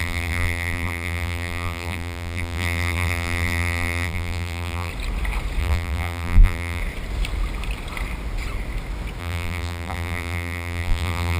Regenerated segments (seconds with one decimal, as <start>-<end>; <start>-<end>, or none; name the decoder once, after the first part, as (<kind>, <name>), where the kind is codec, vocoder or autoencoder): 0.0-4.9 (vocoder, BigVGAN v2); 5.6-6.8; 9.2-11.4